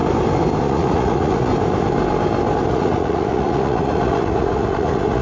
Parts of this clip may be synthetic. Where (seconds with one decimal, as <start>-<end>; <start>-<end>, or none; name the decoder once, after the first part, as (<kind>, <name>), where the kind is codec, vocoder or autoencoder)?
0.6-1.5 (vocoder, Vocos); 2.7-5.2